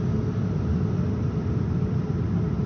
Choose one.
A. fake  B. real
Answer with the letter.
B